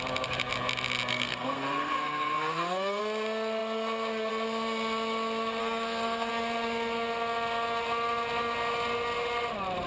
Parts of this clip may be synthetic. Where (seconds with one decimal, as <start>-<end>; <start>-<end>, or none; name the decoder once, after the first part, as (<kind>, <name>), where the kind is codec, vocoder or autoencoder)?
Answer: 1.1-3.0 (codec, SNAC); 5.6-6.3